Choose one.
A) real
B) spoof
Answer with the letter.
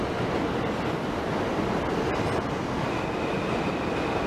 A